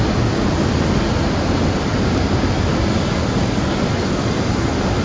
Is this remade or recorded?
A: recorded